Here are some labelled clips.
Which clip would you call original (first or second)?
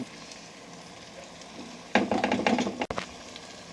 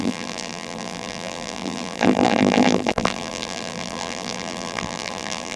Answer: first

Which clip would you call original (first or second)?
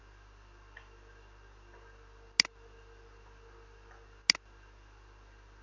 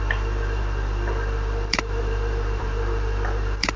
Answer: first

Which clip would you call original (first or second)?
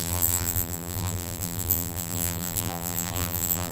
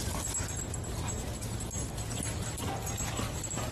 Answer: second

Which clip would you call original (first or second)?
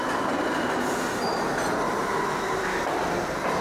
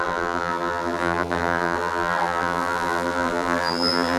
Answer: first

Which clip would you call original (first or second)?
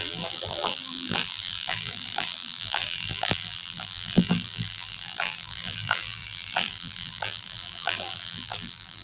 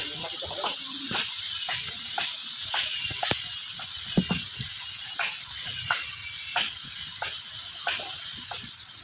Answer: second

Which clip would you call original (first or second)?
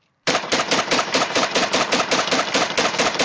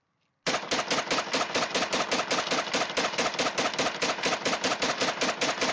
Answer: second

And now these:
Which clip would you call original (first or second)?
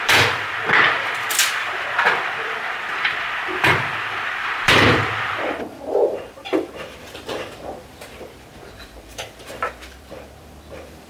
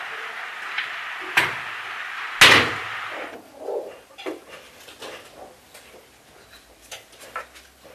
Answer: second